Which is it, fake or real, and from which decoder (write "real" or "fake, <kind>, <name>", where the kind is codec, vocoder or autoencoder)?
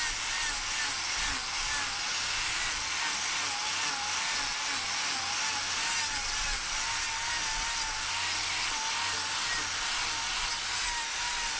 real